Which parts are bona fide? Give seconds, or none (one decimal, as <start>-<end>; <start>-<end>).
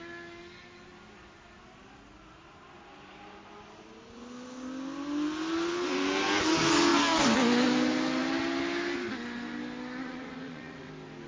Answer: 0.0-10.0; 10.9-11.3